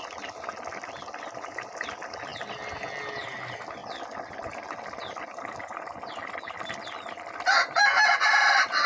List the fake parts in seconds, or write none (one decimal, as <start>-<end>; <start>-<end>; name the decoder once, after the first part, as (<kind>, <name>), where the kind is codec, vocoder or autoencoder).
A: none